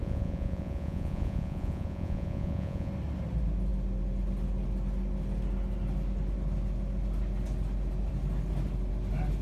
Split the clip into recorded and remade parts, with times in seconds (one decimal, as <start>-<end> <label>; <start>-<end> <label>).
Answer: 0.0-2.9 remade; 2.9-9.4 recorded